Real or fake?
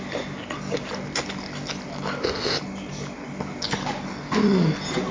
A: real